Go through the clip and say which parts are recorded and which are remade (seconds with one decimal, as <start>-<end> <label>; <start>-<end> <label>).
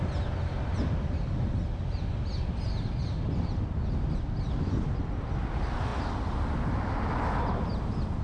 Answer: 0.0-8.2 recorded